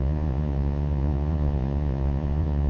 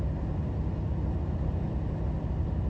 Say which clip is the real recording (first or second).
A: second